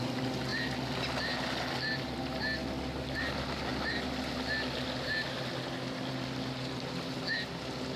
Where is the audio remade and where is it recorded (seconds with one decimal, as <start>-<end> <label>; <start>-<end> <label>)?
0.0-8.0 recorded